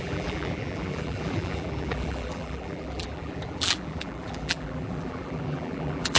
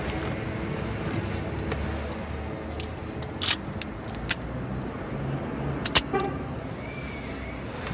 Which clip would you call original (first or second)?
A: second